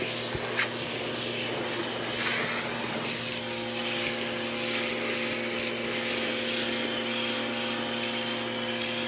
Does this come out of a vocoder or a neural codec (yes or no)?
no